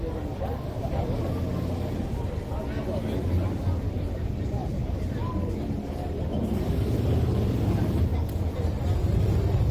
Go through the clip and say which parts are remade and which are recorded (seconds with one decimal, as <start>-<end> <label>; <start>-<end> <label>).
0.0-9.7 recorded